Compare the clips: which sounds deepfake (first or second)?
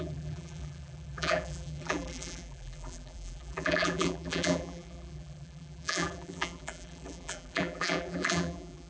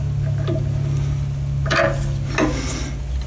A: first